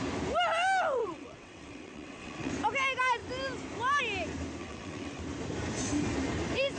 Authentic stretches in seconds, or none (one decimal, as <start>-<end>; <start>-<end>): 0.0-1.0; 2.5-4.6; 5.2-6.8